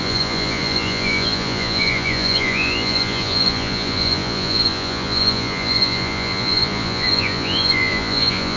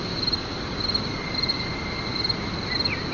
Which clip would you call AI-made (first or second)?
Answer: first